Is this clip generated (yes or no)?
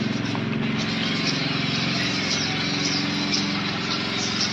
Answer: no